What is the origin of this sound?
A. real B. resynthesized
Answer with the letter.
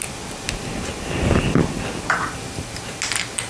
A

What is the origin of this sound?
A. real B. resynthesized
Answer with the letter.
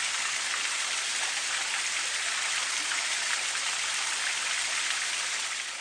A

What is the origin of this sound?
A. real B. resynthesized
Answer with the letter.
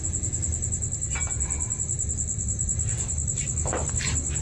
A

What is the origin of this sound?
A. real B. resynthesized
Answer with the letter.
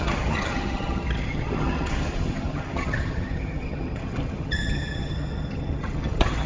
B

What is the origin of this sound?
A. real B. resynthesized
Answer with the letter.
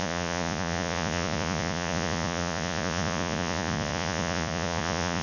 B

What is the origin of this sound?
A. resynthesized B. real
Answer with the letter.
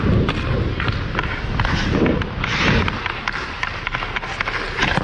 B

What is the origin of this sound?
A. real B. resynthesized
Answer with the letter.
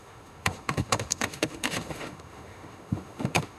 B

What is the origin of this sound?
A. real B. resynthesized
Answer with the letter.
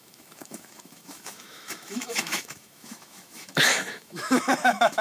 B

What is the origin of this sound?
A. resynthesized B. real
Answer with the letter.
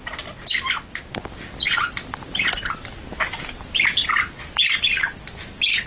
B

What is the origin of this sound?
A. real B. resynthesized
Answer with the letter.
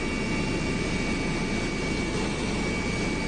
A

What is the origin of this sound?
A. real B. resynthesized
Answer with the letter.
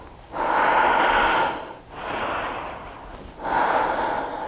A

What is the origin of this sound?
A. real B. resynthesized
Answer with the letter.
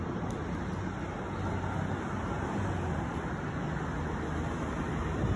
A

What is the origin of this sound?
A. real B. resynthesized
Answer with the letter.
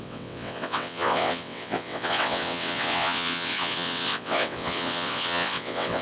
B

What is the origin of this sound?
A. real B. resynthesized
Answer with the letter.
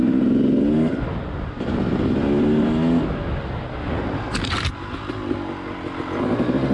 A